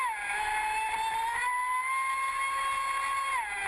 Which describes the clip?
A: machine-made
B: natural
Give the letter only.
B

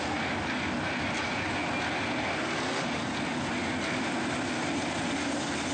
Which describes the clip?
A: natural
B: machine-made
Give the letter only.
A